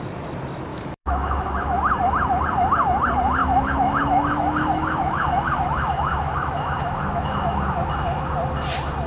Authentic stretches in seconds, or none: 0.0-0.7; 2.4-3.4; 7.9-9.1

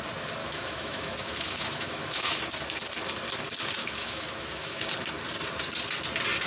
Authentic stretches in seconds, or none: 0.0-0.4; 2.4-3.8; 4.8-6.5

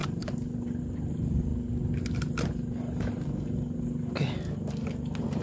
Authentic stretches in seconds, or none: 0.0-5.4